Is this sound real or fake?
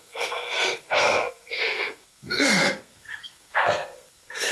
fake